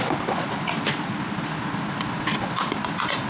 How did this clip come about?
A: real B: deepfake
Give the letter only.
A